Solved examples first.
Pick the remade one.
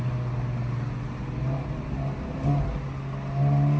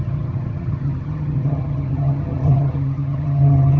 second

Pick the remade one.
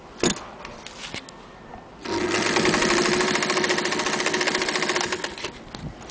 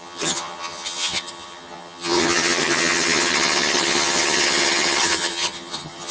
second